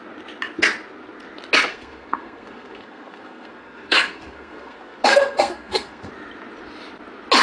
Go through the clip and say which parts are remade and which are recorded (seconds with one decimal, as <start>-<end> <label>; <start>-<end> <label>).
0.0-1.7 recorded; 1.7-6.1 remade; 6.1-7.4 recorded